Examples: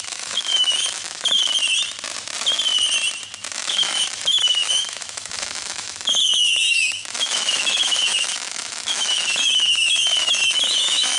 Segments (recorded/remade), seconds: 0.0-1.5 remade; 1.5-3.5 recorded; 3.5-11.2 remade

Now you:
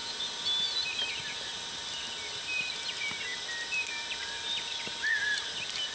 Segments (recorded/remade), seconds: 0.0-5.9 recorded

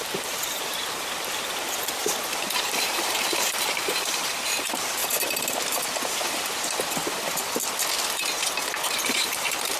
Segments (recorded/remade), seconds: 0.0-2.0 remade; 2.0-2.7 recorded; 2.7-5.0 remade; 5.0-9.1 recorded; 9.1-9.8 remade

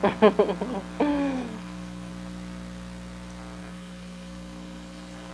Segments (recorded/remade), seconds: 0.0-1.1 recorded; 1.1-2.1 remade; 2.1-3.6 recorded; 3.6-5.3 remade